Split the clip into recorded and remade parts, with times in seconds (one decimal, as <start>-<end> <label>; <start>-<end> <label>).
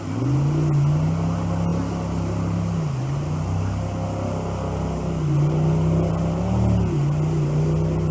0.0-8.1 recorded